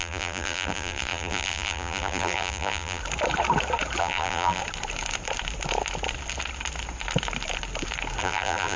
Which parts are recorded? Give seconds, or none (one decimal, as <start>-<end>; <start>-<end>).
3.0-4.0; 4.6-8.2